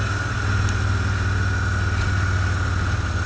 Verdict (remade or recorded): recorded